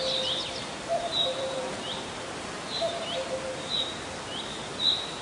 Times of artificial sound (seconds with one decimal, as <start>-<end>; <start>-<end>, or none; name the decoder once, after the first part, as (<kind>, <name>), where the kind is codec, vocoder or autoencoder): 0.9-4.0 (vocoder, BigVGAN v2)